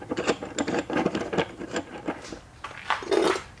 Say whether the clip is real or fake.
real